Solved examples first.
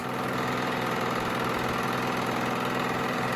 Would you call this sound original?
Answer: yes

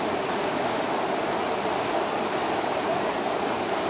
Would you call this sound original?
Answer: yes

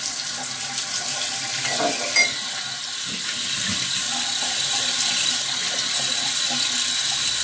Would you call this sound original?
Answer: yes